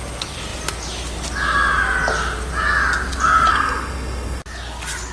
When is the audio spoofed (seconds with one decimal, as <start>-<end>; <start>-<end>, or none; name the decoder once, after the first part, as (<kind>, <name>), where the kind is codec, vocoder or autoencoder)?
3.5-4.4 (codec, SNAC)